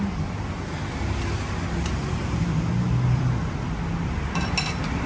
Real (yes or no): yes